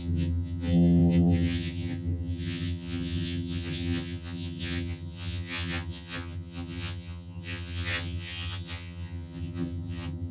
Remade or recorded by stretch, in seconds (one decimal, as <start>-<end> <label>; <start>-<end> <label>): 0.0-10.3 remade